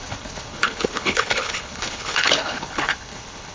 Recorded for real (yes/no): no